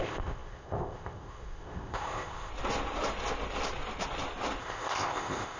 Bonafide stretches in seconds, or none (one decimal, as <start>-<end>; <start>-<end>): 2.5-4.6